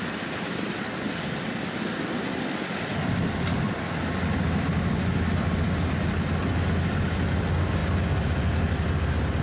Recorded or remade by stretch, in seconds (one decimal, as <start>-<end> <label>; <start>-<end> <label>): 0.0-9.4 recorded